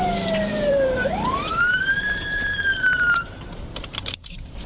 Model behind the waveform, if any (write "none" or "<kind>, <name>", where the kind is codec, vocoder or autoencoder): vocoder, BigVGAN v2